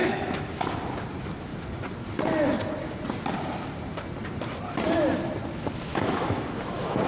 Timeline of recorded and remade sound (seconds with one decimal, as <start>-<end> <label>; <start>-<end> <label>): 0.0-0.7 remade; 0.7-5.9 recorded; 5.9-7.1 remade